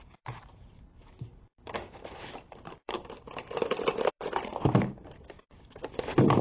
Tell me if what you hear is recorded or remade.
remade